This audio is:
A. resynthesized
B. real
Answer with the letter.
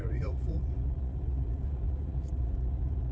A